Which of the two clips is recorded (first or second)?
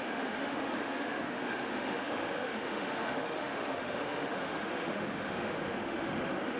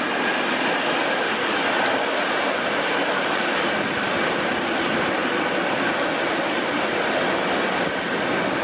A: second